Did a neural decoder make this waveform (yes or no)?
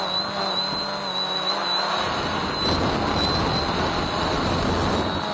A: no